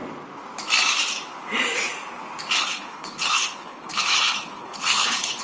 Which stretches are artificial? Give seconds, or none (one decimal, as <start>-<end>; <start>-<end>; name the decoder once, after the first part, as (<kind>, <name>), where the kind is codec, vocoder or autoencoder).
2.7-5.4 (codec, HILCodec)